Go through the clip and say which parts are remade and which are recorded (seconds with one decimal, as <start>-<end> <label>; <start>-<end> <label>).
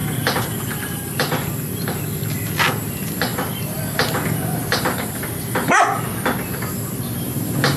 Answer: 0.0-7.8 recorded